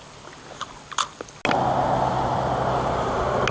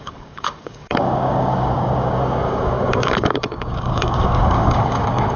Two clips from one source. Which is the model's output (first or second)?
second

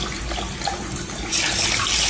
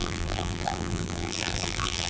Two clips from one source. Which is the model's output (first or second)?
second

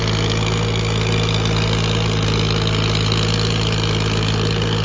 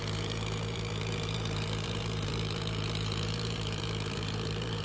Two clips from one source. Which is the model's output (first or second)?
second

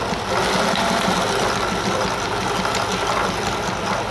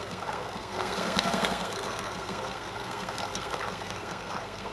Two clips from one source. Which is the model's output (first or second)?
second